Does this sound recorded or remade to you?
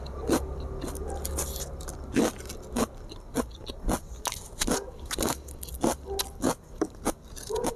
recorded